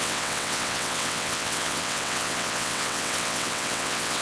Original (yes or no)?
no